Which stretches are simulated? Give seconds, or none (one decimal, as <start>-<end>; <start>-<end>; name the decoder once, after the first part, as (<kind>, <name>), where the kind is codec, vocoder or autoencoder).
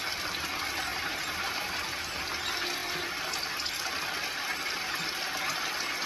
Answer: 0.9-2.2 (vocoder, BigVGAN v2)